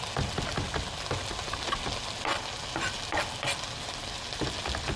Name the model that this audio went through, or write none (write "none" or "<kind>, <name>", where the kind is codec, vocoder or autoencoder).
none